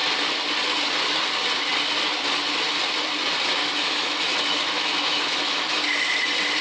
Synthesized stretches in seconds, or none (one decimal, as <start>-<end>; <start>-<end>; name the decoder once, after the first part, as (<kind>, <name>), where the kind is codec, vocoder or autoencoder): 3.6-5.8 (autoencoder, DAC-VAE)